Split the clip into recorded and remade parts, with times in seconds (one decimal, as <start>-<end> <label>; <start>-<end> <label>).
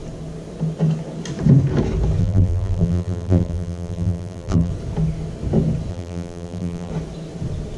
0.0-2.2 recorded; 2.2-4.7 remade; 4.7-5.9 recorded; 5.9-6.9 remade; 6.9-7.8 recorded